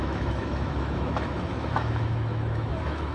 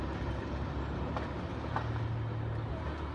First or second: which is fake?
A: first